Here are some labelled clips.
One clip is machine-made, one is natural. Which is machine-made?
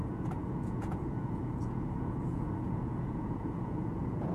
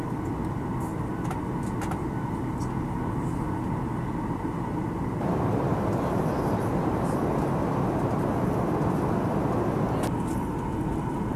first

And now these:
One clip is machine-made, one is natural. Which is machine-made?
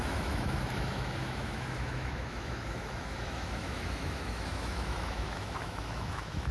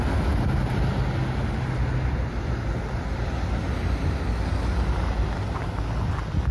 first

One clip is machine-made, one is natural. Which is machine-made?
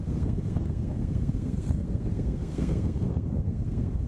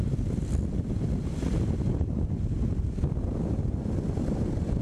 first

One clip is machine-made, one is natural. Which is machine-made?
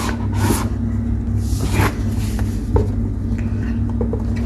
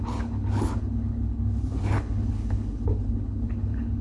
second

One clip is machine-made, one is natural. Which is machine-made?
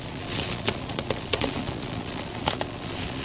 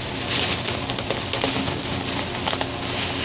first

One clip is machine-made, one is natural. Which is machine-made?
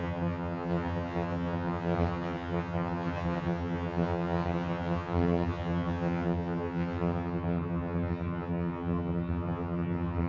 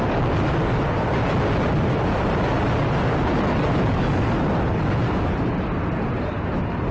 first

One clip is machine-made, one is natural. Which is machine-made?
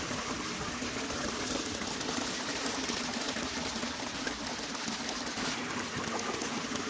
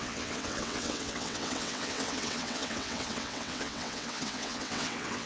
second